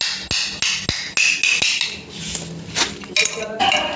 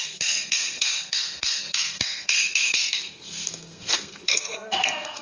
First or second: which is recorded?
first